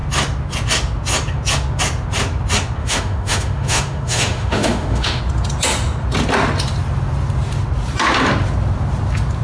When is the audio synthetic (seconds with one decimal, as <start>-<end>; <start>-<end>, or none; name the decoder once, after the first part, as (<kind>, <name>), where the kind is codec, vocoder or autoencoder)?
2.8-5.2 (autoencoder, DAC-VAE)